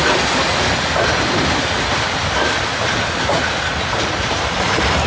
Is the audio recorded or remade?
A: recorded